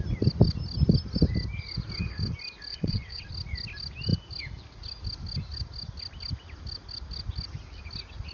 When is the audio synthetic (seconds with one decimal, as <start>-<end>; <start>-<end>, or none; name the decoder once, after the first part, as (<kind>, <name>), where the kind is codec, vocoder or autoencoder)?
2.7-3.3 (vocoder, WaveNeXt)